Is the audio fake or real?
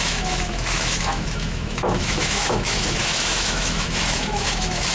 fake